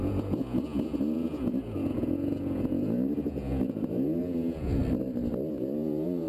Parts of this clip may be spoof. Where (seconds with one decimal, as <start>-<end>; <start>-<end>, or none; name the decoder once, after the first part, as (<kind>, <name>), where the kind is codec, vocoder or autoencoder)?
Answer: 0.0-4.8 (vocoder, Vocos); 5.5-6.3